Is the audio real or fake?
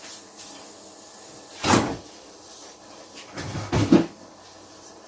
fake